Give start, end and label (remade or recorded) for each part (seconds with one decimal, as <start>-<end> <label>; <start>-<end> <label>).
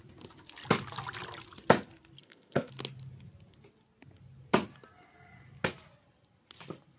0.0-2.2 recorded; 2.2-2.7 remade; 2.7-7.0 recorded